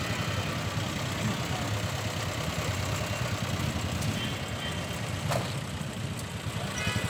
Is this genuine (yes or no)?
yes